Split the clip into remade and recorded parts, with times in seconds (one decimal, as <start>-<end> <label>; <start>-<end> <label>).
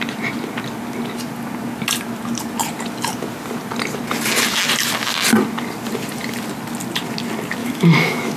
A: 0.0-7.6 recorded; 7.6-8.4 remade